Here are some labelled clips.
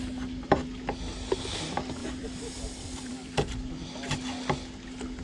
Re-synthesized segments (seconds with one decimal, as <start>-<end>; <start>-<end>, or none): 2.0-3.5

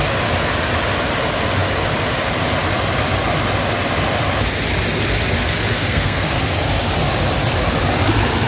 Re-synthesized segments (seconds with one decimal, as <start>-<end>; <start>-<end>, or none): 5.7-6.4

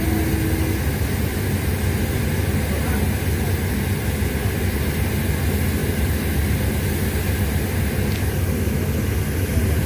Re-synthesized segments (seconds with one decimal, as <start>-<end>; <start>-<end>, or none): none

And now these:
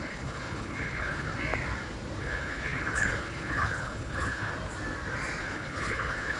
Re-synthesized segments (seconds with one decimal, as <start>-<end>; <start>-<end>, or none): 0.0-1.3; 2.2-4.5; 5.4-6.4

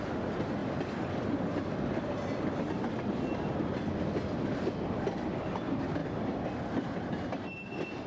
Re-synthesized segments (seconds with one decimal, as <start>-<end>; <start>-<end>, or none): none

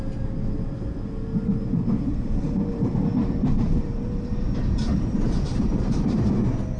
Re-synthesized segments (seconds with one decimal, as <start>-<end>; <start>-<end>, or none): 2.1-2.9; 3.4-6.3